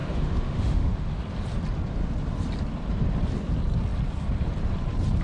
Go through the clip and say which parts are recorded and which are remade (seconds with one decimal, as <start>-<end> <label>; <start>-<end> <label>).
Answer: 0.0-1.2 remade; 1.2-5.2 recorded